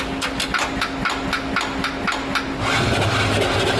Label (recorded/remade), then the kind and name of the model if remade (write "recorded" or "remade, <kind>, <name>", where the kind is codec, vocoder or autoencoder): recorded